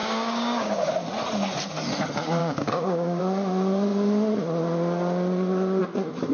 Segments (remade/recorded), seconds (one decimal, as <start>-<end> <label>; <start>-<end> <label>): 0.0-0.9 remade; 0.9-2.4 recorded; 2.4-3.2 remade; 3.2-6.3 recorded